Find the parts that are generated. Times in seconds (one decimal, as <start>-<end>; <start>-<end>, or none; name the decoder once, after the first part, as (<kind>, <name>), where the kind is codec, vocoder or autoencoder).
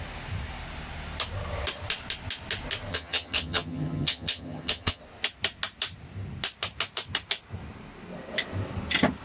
2.9-5.0 (vocoder, HiFi-GAN)